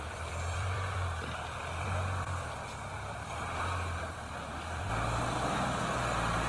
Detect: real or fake fake